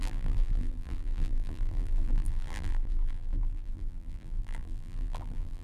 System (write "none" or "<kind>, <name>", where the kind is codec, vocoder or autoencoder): vocoder, BigVGAN v2